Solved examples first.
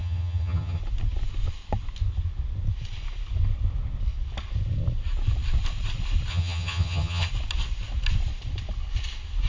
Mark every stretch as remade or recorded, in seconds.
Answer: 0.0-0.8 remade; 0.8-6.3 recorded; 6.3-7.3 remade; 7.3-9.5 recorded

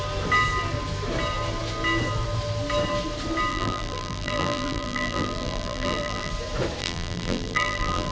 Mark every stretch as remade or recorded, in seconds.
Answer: 0.0-3.5 recorded; 3.5-6.3 remade; 6.3-6.8 recorded; 6.8-8.1 remade

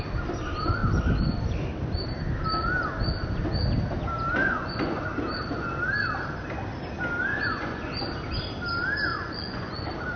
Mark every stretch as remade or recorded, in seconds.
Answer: 0.0-4.4 recorded; 4.4-5.0 remade; 5.0-7.3 recorded; 7.3-7.9 remade; 7.9-9.1 recorded; 9.1-9.7 remade; 9.7-10.2 recorded

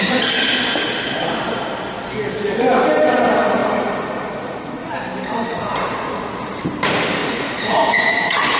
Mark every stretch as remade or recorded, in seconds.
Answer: 0.0-3.6 recorded; 3.6-4.9 remade; 4.9-5.5 recorded; 5.5-6.6 remade; 6.6-7.2 recorded; 7.2-8.6 remade

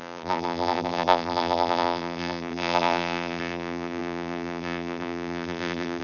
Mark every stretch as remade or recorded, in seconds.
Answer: 0.0-6.0 remade

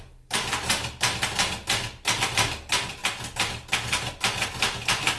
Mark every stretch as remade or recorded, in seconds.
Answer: 0.0-5.2 recorded